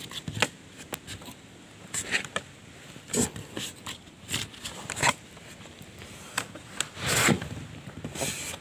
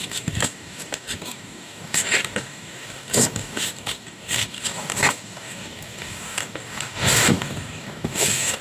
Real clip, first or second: first